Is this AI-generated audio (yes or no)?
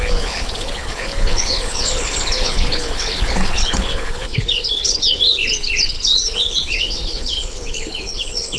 yes